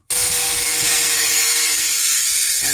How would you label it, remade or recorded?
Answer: remade